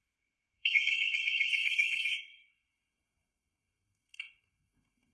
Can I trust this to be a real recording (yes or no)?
no